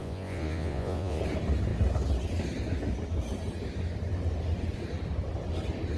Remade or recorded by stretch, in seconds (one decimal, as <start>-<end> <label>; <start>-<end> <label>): 0.0-1.2 remade; 1.2-6.0 recorded

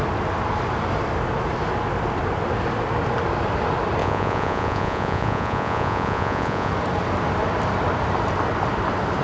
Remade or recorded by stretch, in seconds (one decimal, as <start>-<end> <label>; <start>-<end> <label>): 0.0-4.0 recorded; 4.0-6.7 remade; 6.7-9.2 recorded

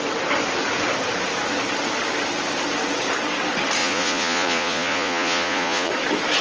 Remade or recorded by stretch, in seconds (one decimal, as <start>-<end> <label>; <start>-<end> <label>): 0.0-3.8 recorded; 3.8-5.9 remade; 5.9-6.4 recorded

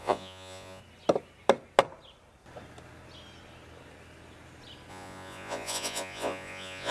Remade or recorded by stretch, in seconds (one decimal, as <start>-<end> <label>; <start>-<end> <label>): 0.0-0.8 remade; 0.8-4.9 recorded; 4.9-6.9 remade

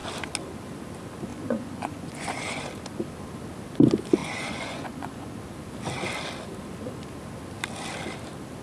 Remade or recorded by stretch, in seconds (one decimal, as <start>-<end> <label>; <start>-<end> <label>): 0.0-1.3 recorded; 1.3-2.6 remade; 2.6-4.2 recorded; 4.2-5.4 remade; 5.4-8.6 recorded

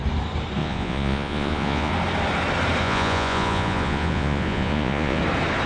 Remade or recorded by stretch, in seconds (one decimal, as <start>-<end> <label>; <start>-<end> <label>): 0.0-0.6 recorded; 0.6-1.9 remade; 1.9-2.8 recorded; 2.8-5.2 remade; 5.2-5.7 recorded

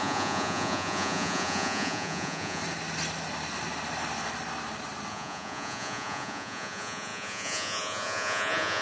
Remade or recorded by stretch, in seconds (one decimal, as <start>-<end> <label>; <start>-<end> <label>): 0.0-2.6 remade; 2.6-5.1 recorded; 5.1-8.8 remade

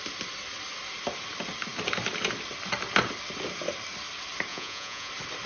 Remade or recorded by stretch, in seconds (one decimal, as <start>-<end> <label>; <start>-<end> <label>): 0.0-4.5 recorded; 4.5-5.1 remade; 5.1-5.5 recorded